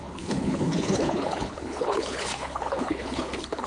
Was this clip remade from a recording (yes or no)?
yes